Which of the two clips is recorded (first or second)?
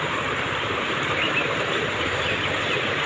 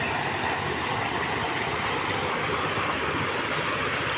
second